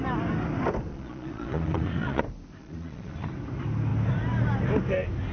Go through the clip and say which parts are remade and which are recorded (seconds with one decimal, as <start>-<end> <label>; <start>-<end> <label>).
0.0-0.9 recorded; 0.9-2.2 remade; 2.2-2.6 recorded; 2.6-3.3 remade; 3.3-5.3 recorded